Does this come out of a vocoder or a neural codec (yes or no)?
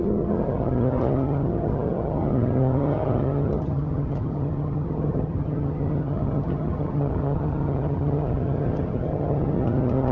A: yes